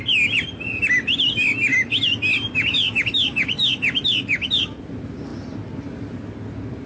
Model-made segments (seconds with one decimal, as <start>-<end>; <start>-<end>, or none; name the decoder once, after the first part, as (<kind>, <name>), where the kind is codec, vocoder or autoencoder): none